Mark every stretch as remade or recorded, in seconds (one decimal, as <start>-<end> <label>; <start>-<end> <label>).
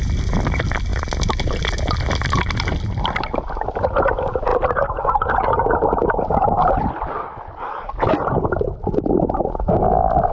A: 0.0-10.3 recorded